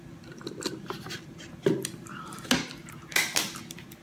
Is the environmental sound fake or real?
real